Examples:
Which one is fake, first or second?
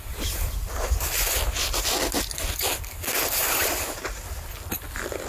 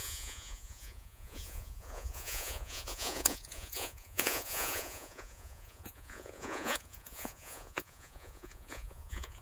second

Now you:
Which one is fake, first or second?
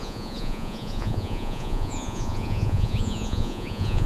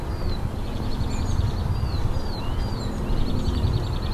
first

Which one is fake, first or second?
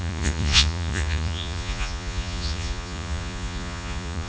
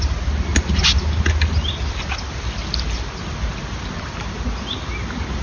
first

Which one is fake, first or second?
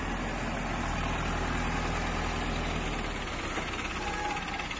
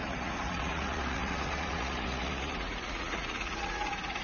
second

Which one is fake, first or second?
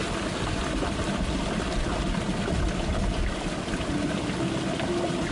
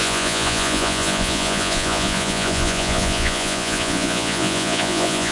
second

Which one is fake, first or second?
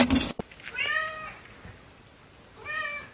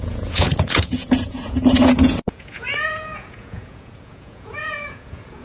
second